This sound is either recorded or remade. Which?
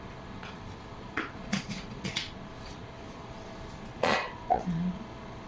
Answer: remade